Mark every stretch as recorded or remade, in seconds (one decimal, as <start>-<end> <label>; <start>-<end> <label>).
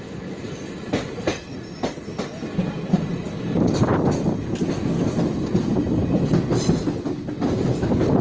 0.0-8.2 recorded